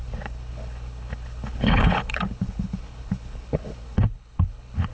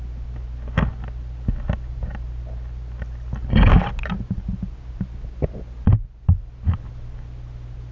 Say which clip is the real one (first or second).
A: second